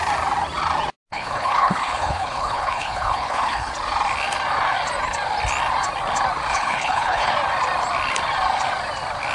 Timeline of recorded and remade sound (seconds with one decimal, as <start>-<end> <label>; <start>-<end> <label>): 0.0-1.1 recorded; 1.1-3.7 remade; 3.7-6.5 recorded; 6.5-7.3 remade; 7.3-9.3 recorded